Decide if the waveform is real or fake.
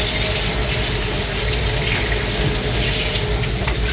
real